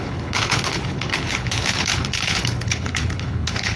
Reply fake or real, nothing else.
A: fake